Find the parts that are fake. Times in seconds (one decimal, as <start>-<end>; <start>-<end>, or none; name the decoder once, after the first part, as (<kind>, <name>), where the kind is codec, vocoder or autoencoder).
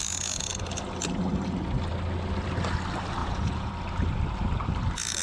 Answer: 3.2-3.7 (vocoder, Vocos)